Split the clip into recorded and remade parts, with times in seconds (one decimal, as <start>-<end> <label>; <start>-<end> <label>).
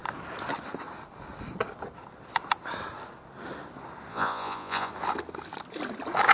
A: 0.0-4.1 recorded; 4.1-4.9 remade; 4.9-6.3 recorded